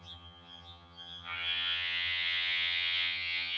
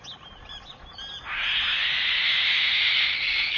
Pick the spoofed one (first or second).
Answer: first